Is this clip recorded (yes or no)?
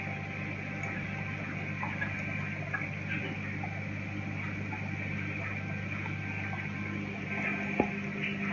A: yes